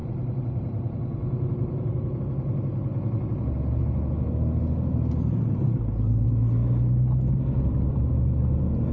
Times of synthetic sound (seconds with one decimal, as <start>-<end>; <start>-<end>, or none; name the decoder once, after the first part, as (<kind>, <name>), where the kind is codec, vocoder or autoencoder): 0.0-2.2 (vocoder, BigVGAN v2)